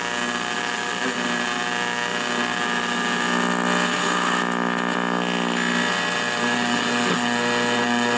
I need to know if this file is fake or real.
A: real